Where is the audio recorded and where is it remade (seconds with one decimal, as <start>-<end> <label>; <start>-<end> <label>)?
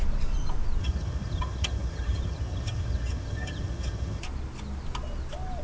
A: 0.0-0.8 recorded; 0.8-4.2 remade; 4.2-5.6 recorded